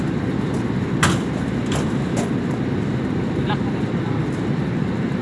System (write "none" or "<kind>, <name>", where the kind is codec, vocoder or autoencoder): none